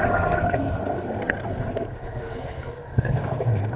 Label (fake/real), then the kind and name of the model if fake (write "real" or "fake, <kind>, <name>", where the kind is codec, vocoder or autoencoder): fake, codec, SNAC